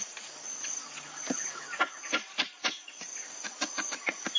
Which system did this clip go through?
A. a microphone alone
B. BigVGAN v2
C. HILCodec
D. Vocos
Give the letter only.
A